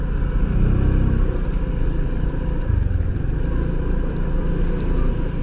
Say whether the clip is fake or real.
real